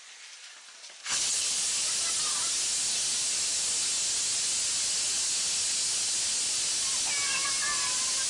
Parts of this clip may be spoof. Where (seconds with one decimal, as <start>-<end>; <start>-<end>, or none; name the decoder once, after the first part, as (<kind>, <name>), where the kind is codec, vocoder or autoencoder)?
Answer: 1.0-1.6 (codec, HILCodec)